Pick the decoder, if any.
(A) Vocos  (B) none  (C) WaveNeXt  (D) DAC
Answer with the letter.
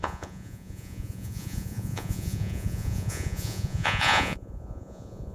A